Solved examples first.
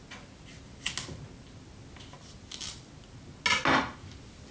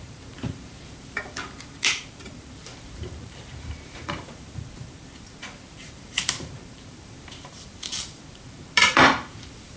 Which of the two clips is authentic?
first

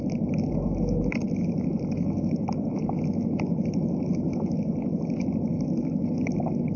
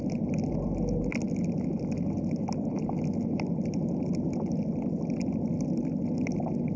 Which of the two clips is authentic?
second